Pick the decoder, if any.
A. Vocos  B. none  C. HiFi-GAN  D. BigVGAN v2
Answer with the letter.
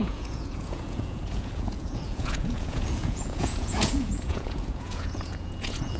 A